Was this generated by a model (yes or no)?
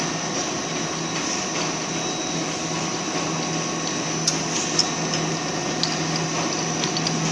no